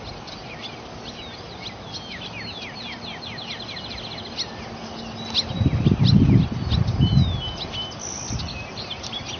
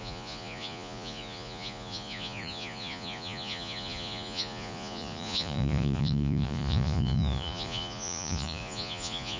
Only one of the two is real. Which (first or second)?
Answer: first